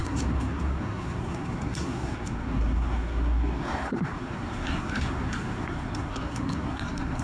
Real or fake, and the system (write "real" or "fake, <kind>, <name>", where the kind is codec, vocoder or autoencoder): fake, codec, SNAC